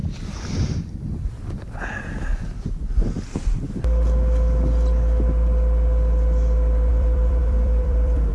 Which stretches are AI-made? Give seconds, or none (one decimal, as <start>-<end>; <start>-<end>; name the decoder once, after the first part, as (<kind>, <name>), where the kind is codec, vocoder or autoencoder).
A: 0.0-2.3 (vocoder, BigVGAN v2); 6.9-8.3